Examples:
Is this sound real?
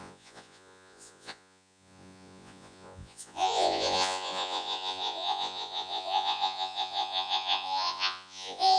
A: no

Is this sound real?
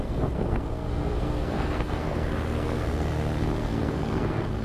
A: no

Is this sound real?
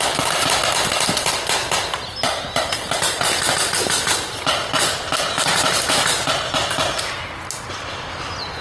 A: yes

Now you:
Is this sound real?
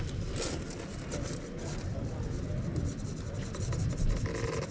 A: yes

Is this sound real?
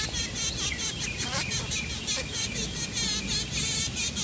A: yes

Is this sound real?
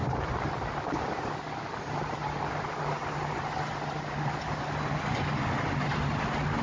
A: yes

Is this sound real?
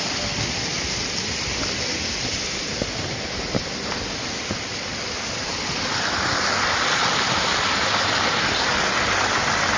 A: yes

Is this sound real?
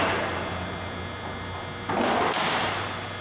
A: yes